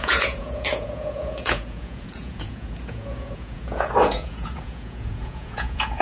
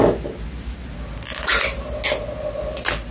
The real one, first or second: second